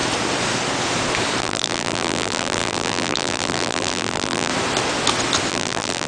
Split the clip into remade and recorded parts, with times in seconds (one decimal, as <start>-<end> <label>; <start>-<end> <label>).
0.0-1.4 recorded; 1.4-4.5 remade; 4.5-5.5 recorded; 5.5-6.1 remade